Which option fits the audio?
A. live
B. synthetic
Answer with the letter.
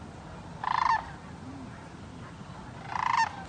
A